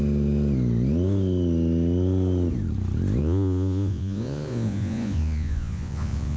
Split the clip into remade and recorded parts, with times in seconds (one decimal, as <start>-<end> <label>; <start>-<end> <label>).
0.0-3.2 recorded; 3.2-6.4 remade